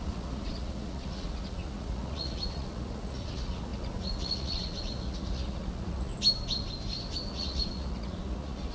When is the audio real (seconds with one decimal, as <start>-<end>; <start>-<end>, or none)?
6.1-7.3